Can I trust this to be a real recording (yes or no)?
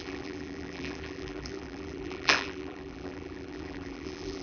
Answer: no